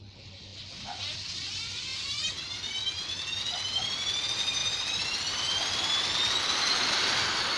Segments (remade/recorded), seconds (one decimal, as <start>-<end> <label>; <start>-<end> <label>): 0.0-7.6 recorded